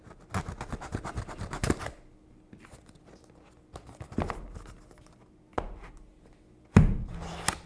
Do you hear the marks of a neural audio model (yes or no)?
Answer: no